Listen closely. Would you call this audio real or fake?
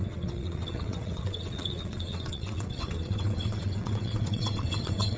fake